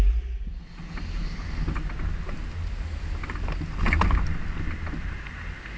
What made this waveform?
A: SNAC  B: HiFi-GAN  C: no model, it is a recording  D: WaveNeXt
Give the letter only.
C